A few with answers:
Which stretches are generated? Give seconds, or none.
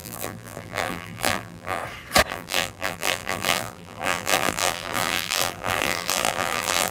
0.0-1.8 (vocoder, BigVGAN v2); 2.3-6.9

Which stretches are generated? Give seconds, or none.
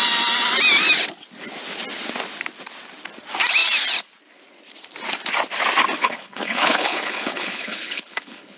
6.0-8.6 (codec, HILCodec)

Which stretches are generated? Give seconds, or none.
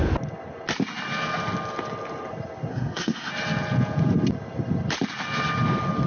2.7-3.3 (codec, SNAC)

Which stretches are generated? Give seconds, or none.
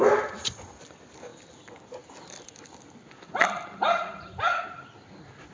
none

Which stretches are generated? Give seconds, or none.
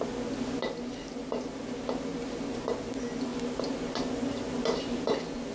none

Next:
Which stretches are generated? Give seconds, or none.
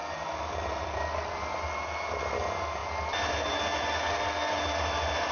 none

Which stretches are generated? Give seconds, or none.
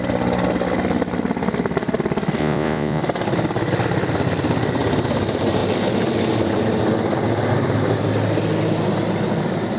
2.4-3.0 (vocoder, Vocos)